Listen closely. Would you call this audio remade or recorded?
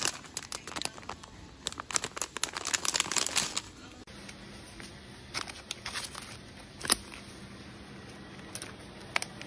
recorded